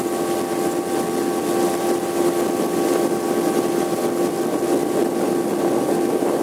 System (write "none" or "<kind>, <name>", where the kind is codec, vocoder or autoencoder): none